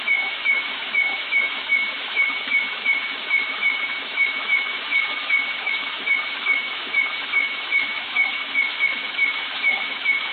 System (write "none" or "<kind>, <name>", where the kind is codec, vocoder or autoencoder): autoencoder, DAC-VAE